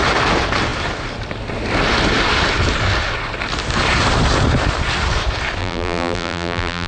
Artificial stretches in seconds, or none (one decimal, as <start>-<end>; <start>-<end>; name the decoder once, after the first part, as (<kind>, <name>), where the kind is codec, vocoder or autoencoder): 5.6-6.9 (vocoder, BigVGAN v2)